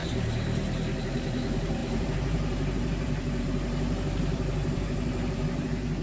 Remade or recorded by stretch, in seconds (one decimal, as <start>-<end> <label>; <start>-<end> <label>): 0.0-1.0 recorded; 1.0-6.0 remade